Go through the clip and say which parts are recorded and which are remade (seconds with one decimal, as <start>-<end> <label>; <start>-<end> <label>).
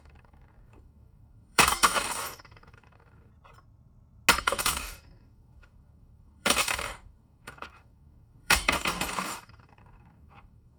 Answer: 0.0-3.3 remade; 3.3-4.4 recorded; 4.4-10.8 remade